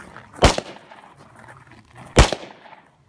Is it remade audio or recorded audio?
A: recorded